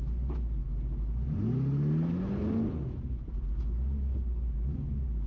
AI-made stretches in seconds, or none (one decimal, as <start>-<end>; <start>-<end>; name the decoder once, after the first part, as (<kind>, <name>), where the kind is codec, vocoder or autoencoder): none